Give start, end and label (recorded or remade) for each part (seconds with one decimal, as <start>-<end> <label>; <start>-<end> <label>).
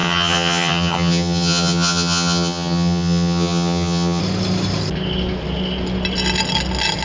0.0-4.2 remade; 4.2-7.0 recorded